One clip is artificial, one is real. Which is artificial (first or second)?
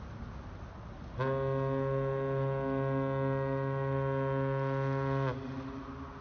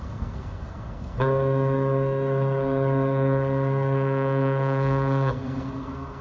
second